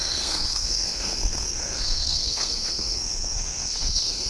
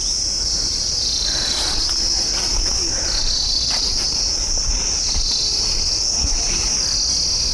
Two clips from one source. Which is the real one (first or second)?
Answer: second